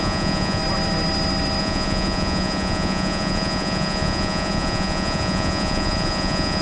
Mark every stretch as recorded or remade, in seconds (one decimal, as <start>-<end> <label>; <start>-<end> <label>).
0.0-0.6 remade; 0.6-1.6 recorded; 1.6-6.6 remade